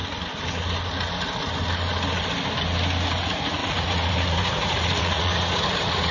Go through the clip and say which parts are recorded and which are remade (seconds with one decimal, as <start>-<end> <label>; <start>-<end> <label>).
0.0-3.2 recorded; 3.2-6.1 remade